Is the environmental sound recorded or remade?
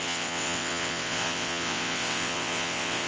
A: remade